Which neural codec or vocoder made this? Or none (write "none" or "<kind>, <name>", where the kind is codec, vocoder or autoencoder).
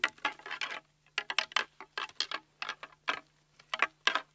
none